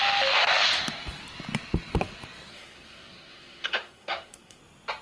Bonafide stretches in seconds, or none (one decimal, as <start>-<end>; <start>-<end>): 0.0-2.5; 4.6-5.0